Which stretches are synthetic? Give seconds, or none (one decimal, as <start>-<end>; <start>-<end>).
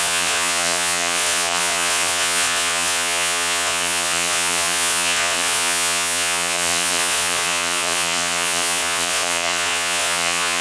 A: 0.0-10.6